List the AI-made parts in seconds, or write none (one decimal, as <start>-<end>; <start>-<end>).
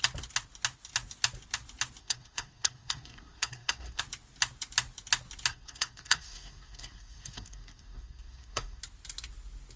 2.0-4.0; 5.5-8.8